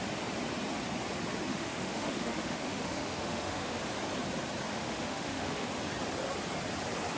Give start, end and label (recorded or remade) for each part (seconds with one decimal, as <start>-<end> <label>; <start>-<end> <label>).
0.0-1.5 recorded; 1.5-3.8 remade; 3.8-4.7 recorded; 4.7-5.7 remade; 5.7-7.2 recorded